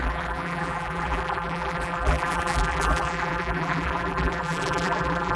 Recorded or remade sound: remade